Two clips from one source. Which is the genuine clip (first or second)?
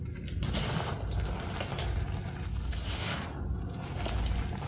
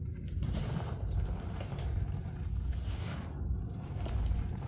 first